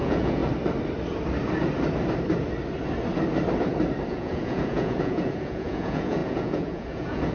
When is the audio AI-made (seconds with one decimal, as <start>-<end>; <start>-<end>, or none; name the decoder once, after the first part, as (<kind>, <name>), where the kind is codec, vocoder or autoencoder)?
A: 0.0-0.4 (vocoder, Vocos); 4.1-7.3